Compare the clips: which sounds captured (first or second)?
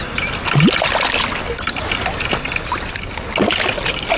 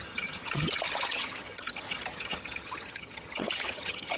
first